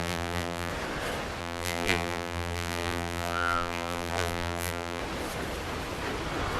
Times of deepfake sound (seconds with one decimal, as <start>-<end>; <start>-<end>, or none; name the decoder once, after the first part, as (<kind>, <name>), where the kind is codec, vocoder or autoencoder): 0.0-0.7 (vocoder, BigVGAN v2); 1.4-5.0